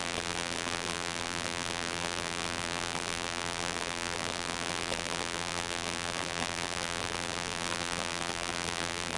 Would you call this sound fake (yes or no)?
yes